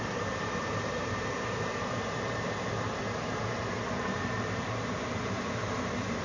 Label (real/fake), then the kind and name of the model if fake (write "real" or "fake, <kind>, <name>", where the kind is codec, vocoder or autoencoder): fake, vocoder, BigVGAN v2